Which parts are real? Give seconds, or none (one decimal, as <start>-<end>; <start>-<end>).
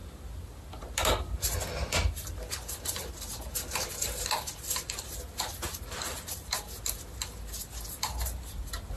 0.0-9.0